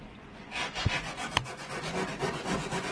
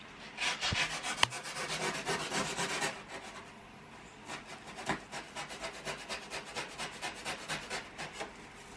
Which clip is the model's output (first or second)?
first